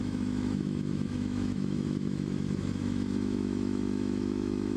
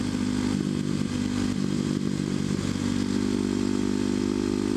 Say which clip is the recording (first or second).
second